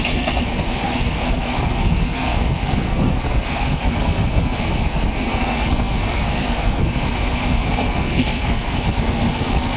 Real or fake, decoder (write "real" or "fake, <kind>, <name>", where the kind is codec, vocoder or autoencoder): fake, codec, SNAC